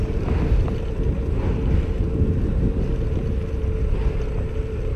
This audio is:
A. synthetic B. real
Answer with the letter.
B